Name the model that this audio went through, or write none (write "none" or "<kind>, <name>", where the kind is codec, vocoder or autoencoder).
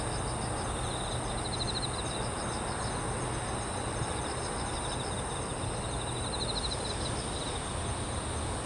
none